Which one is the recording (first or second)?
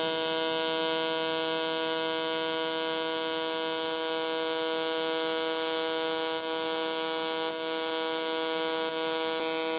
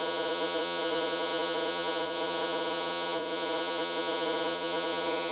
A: first